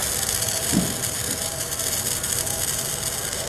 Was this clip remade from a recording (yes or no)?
no